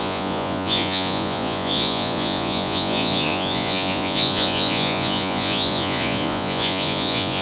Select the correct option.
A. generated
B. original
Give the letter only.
A